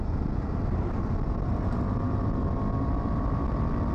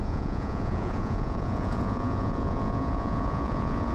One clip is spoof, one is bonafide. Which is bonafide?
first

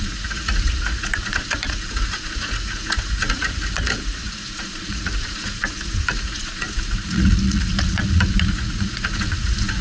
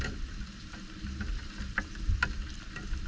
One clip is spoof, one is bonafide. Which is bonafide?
second